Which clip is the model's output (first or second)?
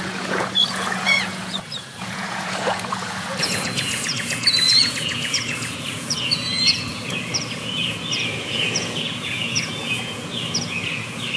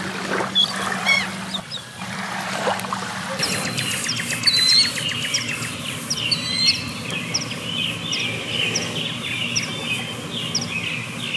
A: first